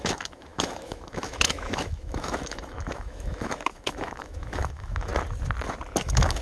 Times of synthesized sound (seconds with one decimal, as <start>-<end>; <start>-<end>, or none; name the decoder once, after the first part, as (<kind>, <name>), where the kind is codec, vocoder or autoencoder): 0.0-5.1 (autoencoder, DAC-VAE); 6.0-6.4